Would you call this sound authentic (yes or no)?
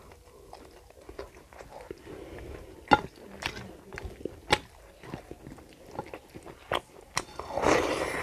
yes